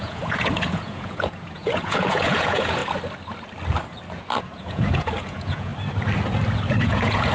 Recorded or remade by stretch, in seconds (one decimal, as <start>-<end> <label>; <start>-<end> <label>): 0.0-2.8 remade; 2.8-4.4 recorded; 4.4-5.7 remade; 5.7-6.7 recorded; 6.7-7.3 remade